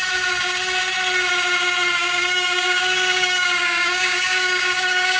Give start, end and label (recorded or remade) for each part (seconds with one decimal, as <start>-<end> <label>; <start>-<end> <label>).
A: 0.0-2.0 recorded; 2.0-5.2 remade